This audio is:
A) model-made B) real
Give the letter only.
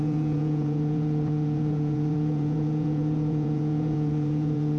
A